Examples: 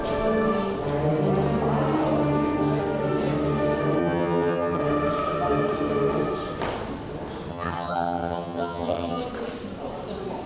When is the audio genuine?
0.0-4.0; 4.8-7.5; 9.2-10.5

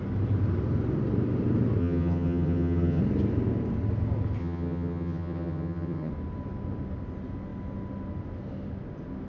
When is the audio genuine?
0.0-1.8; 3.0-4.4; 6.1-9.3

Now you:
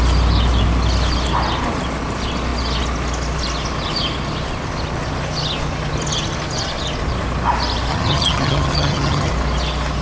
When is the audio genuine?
0.0-7.9; 9.3-10.0